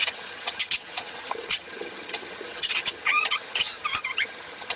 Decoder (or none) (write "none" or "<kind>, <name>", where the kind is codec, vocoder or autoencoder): vocoder, HiFi-GAN